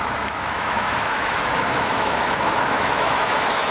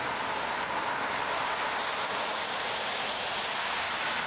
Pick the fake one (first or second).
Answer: first